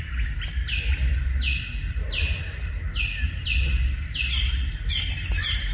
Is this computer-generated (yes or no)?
no